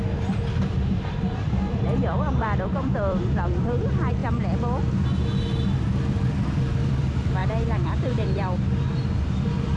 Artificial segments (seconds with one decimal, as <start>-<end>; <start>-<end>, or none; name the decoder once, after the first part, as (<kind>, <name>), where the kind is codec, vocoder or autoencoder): 0.0-4.2 (vocoder, BigVGAN v2); 6.1-9.8